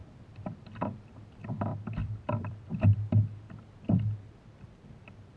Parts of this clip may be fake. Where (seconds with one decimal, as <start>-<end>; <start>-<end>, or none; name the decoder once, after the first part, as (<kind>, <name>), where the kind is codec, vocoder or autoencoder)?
0.0-0.6 (vocoder, BigVGAN v2); 1.7-2.7